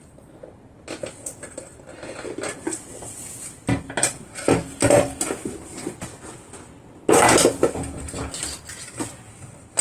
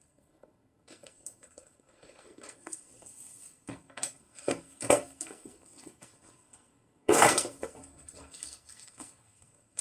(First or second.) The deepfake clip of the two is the second